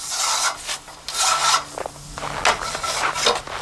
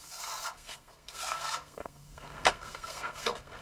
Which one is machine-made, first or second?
second